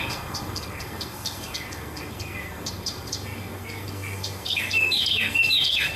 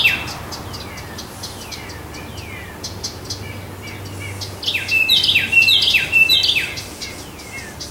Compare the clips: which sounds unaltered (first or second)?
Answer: second